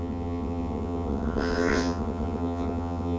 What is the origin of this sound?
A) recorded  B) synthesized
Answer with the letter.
B